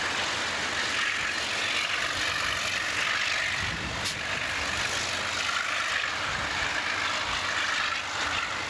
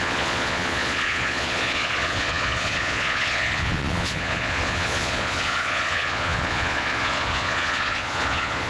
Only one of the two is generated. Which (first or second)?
second